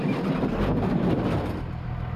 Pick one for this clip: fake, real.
real